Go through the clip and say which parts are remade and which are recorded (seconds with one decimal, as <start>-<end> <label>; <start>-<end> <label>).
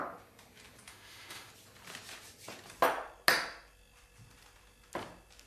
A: 0.0-0.9 recorded; 0.9-1.5 remade; 1.5-5.5 recorded